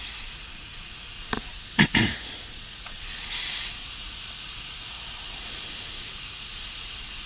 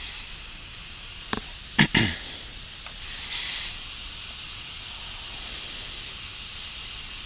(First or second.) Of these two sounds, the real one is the second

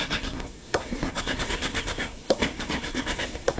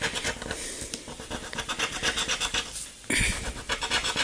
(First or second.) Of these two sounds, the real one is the second